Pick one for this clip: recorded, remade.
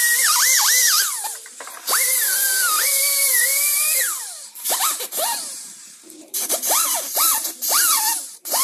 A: remade